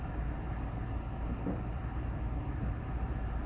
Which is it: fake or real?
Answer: real